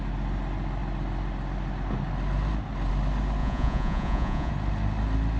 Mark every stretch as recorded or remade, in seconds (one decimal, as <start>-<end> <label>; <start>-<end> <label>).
0.0-3.4 recorded; 3.4-4.5 remade; 4.5-5.4 recorded